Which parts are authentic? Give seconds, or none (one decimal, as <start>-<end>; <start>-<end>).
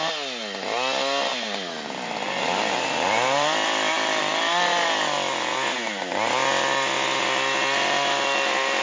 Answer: 0.0-1.3; 4.2-8.8